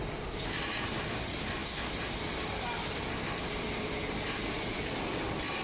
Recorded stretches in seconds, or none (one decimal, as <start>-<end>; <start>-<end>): 0.0-5.6